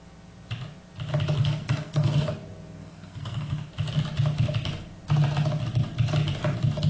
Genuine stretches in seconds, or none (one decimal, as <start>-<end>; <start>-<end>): 0.0-1.4; 2.3-2.8; 3.7-6.9